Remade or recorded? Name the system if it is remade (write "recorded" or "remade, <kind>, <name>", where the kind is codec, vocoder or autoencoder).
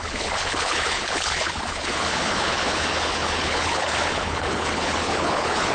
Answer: remade, codec, HILCodec